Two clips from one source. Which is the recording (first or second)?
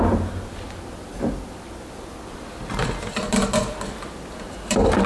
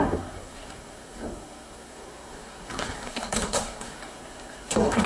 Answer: first